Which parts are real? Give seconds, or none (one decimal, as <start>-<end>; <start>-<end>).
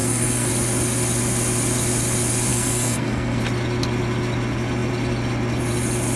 0.5-2.5; 3.4-6.2